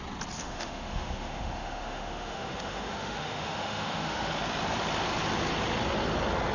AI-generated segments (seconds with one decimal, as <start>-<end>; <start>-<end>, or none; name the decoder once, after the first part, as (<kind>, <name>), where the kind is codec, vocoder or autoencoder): 0.4-4.3 (autoencoder, DAC-VAE)